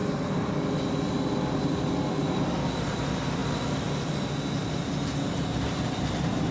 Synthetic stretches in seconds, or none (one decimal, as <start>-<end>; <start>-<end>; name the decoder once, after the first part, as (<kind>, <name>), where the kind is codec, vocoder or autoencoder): none